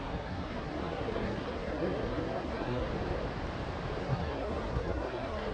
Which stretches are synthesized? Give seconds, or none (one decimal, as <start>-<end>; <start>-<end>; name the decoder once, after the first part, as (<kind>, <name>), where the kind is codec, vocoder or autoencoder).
0.0-2.9 (codec, SNAC); 4.0-5.5